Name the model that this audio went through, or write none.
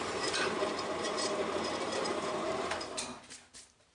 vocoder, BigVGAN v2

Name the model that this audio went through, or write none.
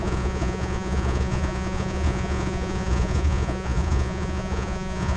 vocoder, Vocos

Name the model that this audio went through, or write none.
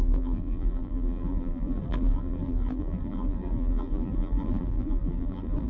vocoder, BigVGAN v2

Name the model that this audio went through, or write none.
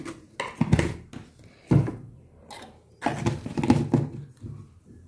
none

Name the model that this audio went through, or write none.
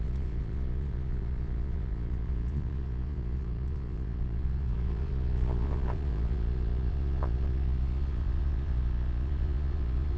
vocoder, Vocos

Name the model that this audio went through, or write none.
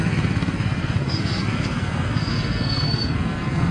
codec, SNAC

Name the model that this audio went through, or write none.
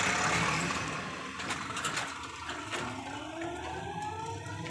none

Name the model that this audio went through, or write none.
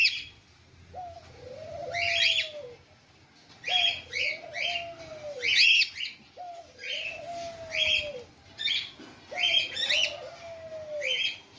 none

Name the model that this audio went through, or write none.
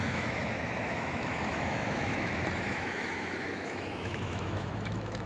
autoencoder, DAC-VAE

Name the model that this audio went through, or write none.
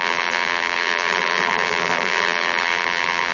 vocoder, BigVGAN v2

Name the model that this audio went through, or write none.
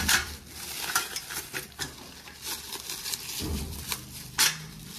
none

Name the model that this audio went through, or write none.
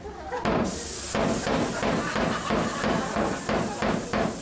none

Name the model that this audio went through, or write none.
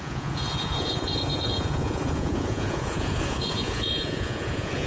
vocoder, Vocos